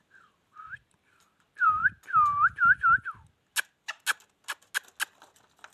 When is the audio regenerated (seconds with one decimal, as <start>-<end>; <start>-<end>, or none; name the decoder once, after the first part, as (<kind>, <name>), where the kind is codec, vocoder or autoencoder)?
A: 0.0-1.8 (vocoder, BigVGAN v2); 5.2-5.7